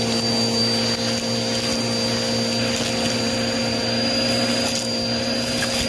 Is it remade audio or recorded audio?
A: recorded